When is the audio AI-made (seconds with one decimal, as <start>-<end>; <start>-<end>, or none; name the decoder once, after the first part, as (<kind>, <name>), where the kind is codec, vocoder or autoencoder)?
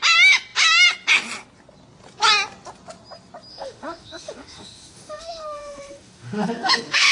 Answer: 3.5-7.1 (autoencoder, DAC-VAE)